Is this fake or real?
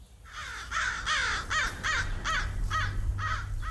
real